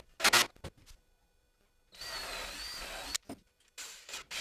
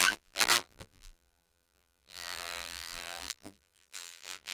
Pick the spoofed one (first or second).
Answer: second